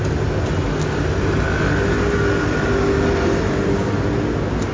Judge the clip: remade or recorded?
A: recorded